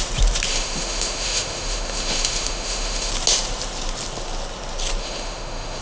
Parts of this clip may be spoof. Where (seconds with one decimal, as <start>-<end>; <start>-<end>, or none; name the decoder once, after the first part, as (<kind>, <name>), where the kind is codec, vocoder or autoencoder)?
0.5-3.1 (autoencoder, DAC-VAE); 5.0-5.8